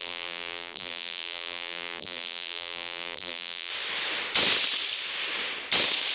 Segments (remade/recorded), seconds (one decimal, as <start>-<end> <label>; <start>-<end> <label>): 0.0-3.7 remade; 3.7-6.1 recorded